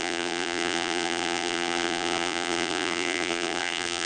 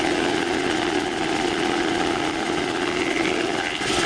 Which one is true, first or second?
second